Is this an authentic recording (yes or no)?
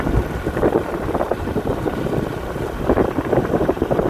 yes